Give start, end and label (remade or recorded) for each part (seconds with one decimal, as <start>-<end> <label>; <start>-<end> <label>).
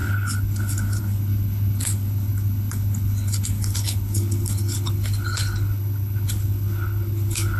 0.0-7.6 remade